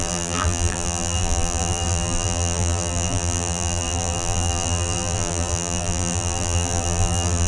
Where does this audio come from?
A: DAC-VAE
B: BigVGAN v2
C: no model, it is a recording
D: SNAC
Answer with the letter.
B